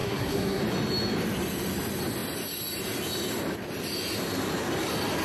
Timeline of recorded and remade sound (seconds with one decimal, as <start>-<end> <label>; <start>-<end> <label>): 0.0-0.6 remade; 0.6-5.2 recorded